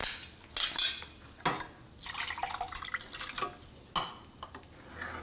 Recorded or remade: recorded